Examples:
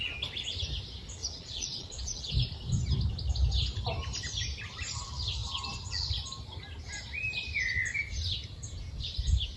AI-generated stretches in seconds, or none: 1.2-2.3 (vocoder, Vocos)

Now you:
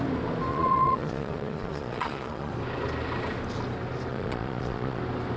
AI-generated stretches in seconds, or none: 0.5-2.5 (vocoder, Vocos); 4.1-5.0

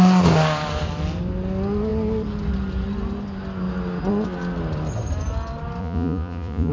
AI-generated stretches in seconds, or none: 5.8-6.7 (vocoder, Vocos)

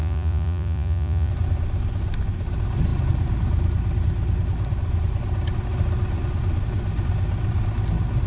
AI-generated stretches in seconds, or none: 0.0-1.3 (vocoder, Vocos)

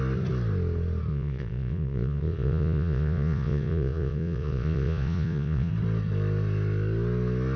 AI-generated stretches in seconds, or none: 1.1-5.7 (vocoder, Vocos)

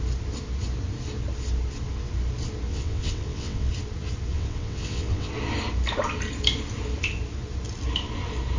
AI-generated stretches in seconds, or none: 2.7-3.7 (vocoder, WaveNeXt); 4.3-5.3

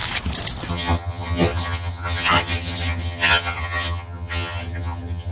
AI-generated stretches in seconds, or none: 0.7-5.3 (vocoder, HiFi-GAN)